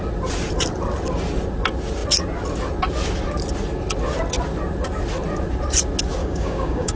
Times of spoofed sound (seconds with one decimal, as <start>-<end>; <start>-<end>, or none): 6.2-7.0